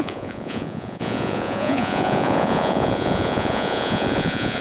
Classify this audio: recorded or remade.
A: remade